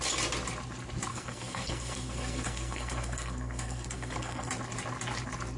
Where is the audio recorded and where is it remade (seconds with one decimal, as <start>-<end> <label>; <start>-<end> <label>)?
0.0-1.1 recorded; 1.1-4.5 remade; 4.5-5.6 recorded